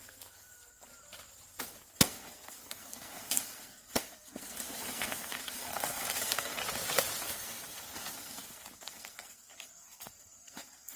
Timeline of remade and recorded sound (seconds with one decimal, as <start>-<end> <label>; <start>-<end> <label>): 0.0-0.9 remade; 0.9-1.6 recorded; 1.6-6.6 remade; 6.6-7.2 recorded; 7.2-11.0 remade